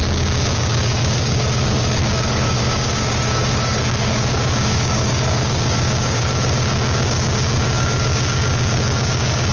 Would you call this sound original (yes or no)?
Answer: no